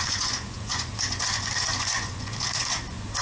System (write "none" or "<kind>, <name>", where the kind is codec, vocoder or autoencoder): vocoder, Vocos